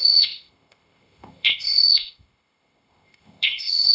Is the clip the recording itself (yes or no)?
no